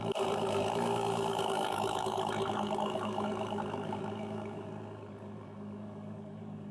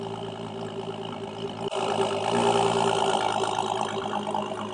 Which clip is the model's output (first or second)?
first